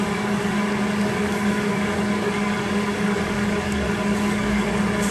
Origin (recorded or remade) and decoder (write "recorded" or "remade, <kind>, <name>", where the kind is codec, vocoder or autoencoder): remade, codec, DAC